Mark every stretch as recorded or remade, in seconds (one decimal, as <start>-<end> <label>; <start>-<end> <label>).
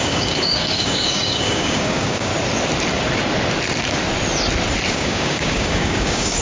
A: 0.0-2.3 remade; 2.3-4.9 recorded; 4.9-6.4 remade